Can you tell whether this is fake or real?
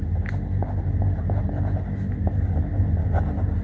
real